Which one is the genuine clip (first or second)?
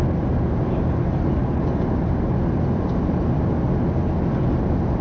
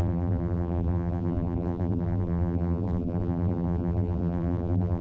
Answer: first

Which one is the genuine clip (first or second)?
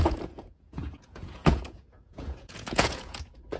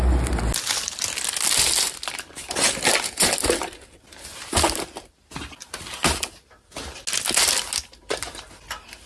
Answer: second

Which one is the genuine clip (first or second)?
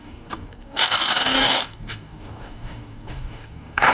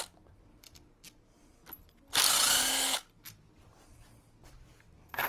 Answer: second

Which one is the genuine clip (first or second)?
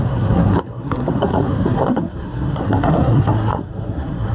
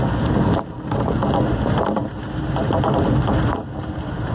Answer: second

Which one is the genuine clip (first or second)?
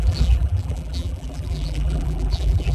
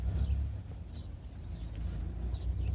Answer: second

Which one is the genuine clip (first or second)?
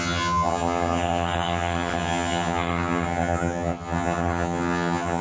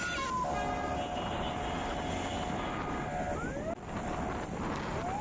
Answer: second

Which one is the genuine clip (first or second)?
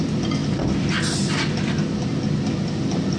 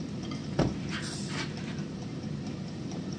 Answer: first